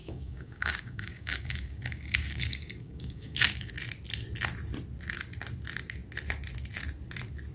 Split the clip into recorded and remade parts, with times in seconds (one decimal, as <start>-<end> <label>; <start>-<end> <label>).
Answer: 0.0-3.7 remade; 3.7-7.5 recorded